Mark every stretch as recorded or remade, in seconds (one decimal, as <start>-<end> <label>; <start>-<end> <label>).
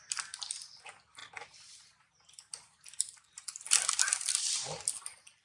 0.0-1.2 remade; 1.2-4.4 recorded; 4.4-5.4 remade